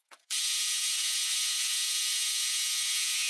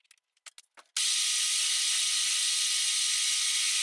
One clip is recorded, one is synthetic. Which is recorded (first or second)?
second